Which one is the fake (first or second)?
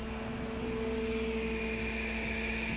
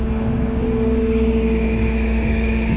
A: second